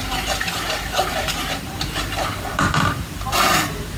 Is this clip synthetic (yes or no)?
yes